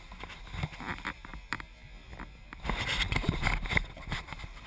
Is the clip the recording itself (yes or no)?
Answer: yes